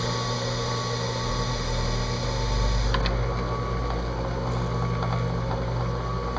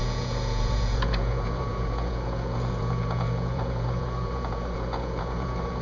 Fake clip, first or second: second